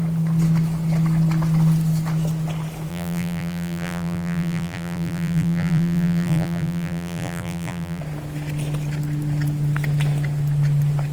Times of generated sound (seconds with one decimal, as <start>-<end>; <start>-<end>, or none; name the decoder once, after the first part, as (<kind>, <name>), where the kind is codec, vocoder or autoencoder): 2.9-8.0 (vocoder, BigVGAN v2)